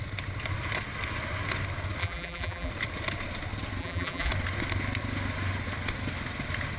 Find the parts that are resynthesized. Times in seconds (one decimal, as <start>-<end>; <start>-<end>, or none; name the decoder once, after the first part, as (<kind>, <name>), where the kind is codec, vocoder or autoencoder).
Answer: 2.0-2.7 (vocoder, BigVGAN v2); 3.8-4.3